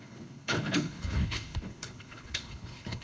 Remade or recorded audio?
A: remade